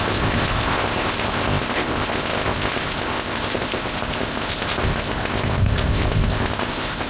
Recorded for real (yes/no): no